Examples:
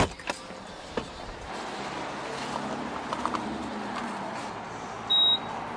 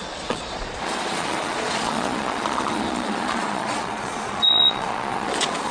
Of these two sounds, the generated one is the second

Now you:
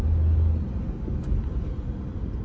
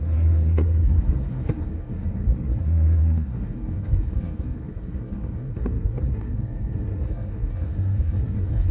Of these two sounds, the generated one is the second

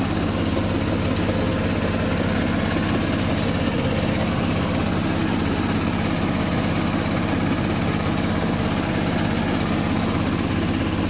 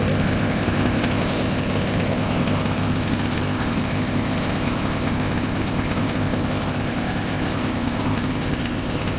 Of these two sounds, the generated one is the second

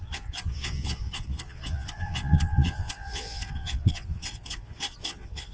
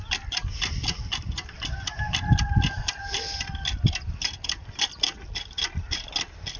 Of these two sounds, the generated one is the first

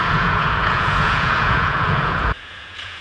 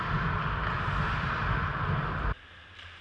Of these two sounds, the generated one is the first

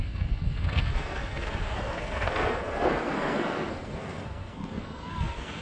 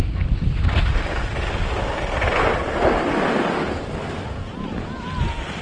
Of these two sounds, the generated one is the first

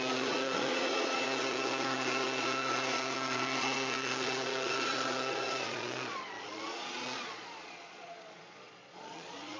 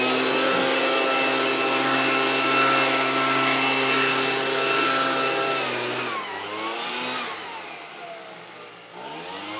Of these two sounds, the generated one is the first